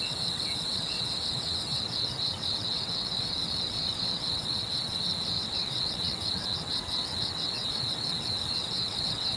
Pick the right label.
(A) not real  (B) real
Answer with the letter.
A